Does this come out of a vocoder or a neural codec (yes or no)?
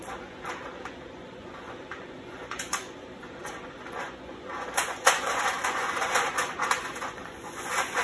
yes